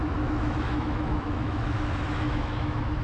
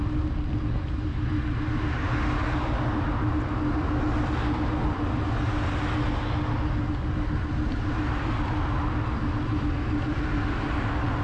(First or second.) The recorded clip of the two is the second